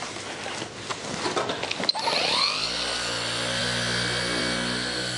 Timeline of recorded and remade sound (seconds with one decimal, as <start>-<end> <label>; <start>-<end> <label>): 0.0-5.2 recorded